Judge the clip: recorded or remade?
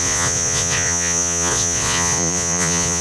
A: remade